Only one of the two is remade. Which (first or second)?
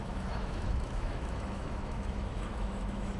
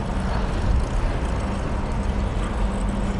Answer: first